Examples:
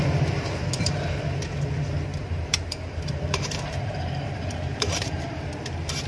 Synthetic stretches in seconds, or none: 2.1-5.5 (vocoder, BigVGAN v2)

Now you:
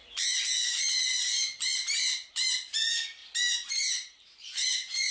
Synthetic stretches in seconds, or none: 0.0-3.2 (vocoder, BigVGAN v2); 3.9-5.1

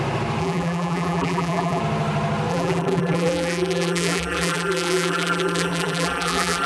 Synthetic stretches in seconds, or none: 0.4-1.8 (vocoder, BigVGAN v2); 2.5-6.7

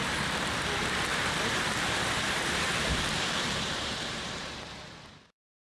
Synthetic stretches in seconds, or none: 1.1-4.5 (vocoder, BigVGAN v2)

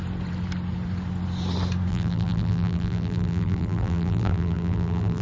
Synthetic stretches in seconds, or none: 1.9-5.2 (vocoder, BigVGAN v2)

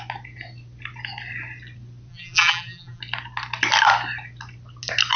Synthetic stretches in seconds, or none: 2.1-3.0 (vocoder, BigVGAN v2)

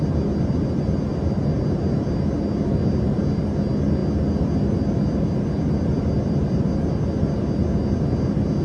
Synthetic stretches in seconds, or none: none

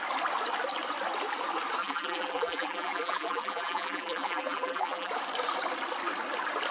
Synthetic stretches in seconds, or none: 1.8-5.1 (vocoder, BigVGAN v2)